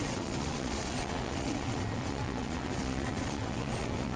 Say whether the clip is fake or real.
fake